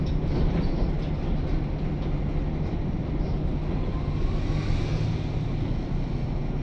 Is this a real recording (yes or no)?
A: yes